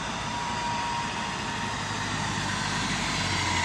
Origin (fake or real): real